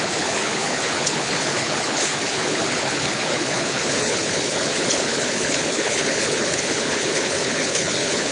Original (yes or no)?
no